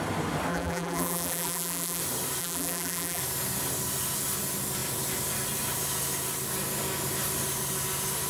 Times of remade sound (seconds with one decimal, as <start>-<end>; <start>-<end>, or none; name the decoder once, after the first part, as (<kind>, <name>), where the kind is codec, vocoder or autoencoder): 0.5-2.0 (vocoder, BigVGAN v2); 2.4-3.2